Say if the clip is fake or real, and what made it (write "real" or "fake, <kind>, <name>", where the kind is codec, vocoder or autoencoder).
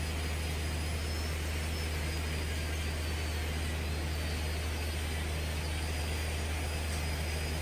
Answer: real